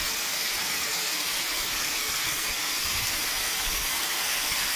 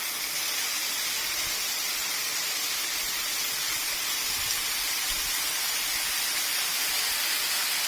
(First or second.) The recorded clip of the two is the second